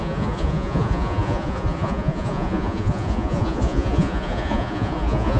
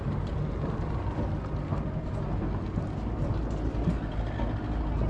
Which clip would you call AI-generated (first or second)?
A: first